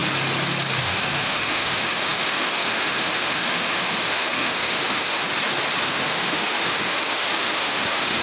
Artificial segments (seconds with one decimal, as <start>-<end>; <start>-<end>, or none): 0.8-5.2; 5.8-8.2